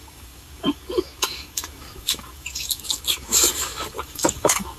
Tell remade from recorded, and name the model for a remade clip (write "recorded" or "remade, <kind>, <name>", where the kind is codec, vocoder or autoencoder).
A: remade, codec, DAC